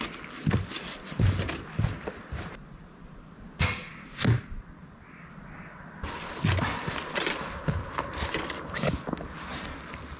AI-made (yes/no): yes